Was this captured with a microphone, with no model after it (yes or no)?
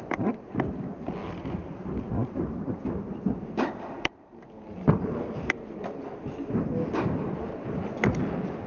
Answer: yes